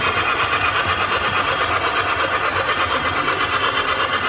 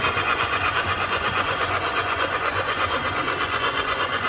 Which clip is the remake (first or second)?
second